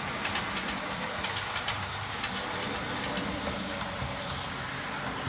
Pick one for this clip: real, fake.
real